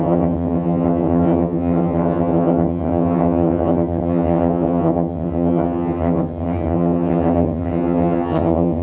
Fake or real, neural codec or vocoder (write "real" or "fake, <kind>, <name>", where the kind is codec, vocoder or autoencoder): fake, vocoder, HiFi-GAN